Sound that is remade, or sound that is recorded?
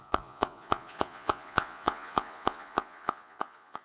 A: remade